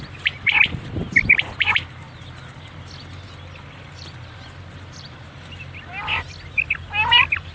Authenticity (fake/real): real